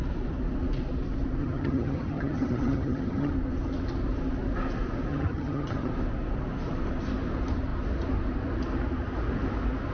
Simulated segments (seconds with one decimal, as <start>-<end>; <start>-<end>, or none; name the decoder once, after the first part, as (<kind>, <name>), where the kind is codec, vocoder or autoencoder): 1.4-3.3 (vocoder, HiFi-GAN); 5.1-5.9